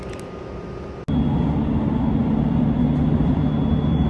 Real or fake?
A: real